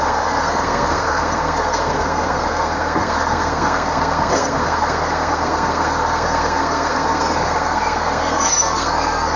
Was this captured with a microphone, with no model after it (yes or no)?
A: no